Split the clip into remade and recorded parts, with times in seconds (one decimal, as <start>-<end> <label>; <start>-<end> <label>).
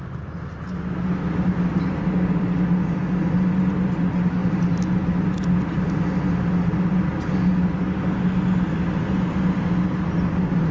0.0-10.7 recorded